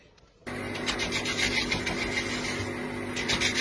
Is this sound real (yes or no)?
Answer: yes